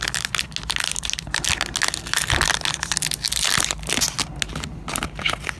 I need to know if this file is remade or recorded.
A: recorded